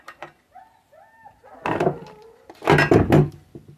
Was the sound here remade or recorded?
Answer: recorded